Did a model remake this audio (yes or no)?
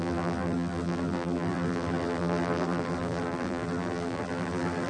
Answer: yes